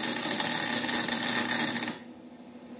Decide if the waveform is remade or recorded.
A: recorded